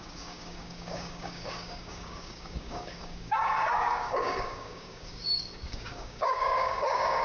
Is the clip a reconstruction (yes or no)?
yes